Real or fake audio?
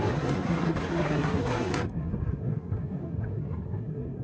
fake